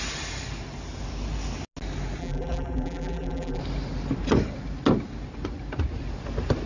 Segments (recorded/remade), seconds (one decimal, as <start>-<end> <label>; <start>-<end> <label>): 0.0-2.2 recorded; 2.2-3.6 remade; 3.6-6.7 recorded